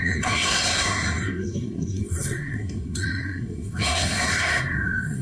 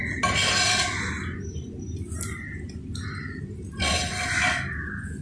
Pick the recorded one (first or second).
second